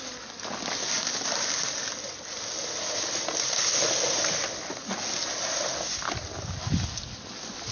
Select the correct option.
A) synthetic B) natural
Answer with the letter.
B